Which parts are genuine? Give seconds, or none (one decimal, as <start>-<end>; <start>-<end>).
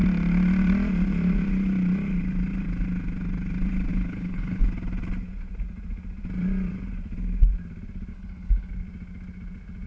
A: 0.0-3.9; 4.7-8.1; 8.7-9.9